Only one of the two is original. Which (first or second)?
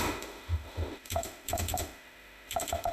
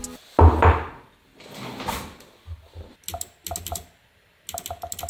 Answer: second